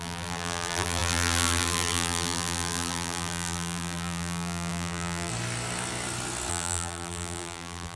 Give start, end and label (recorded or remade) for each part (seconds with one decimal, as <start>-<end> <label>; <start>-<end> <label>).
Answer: 0.0-5.3 remade; 5.3-6.5 recorded; 6.5-8.0 remade